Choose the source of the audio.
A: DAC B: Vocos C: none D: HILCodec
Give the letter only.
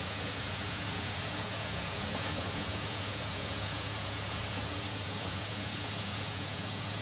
B